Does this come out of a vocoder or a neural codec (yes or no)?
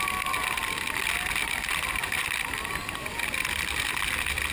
no